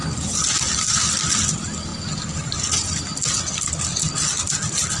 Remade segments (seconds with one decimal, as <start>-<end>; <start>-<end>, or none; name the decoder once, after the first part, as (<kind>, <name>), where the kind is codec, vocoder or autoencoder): none